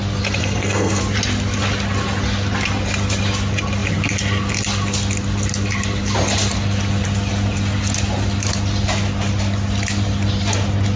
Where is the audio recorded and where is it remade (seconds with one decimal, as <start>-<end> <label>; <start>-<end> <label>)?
0.0-0.4 recorded; 0.4-1.0 remade; 1.0-11.0 recorded